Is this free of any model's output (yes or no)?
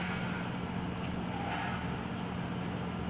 yes